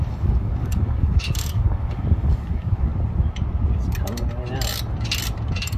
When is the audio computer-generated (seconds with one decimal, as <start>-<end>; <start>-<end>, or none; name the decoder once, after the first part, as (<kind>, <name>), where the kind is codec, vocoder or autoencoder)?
0.0-2.9 (codec, DAC)